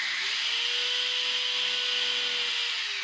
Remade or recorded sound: recorded